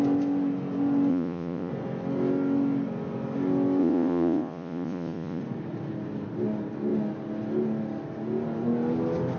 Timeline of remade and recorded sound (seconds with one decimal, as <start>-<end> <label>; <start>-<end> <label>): 0.0-1.1 recorded; 1.1-1.7 remade; 1.7-3.8 recorded; 3.8-5.4 remade; 5.4-9.4 recorded